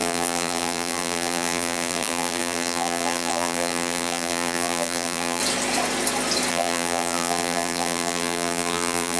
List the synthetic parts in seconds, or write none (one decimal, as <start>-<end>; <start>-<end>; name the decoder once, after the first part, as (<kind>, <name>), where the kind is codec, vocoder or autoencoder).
0.0-5.4 (vocoder, BigVGAN v2); 6.5-9.2